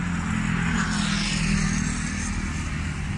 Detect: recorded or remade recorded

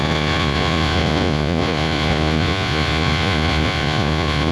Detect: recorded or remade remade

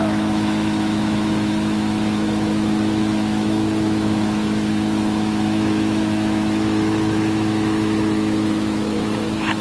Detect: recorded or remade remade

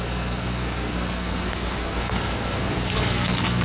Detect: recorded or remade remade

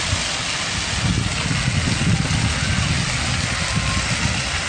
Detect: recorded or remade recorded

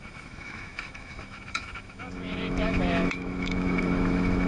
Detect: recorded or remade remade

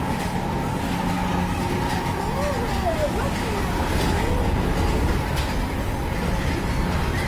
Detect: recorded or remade recorded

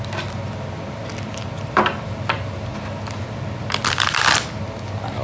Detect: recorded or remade recorded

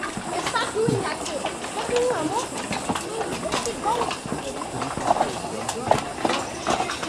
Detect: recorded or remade recorded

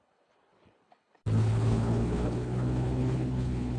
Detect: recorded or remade remade